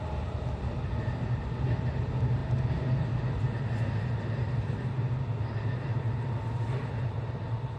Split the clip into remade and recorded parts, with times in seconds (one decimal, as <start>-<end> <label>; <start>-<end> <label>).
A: 0.0-7.8 recorded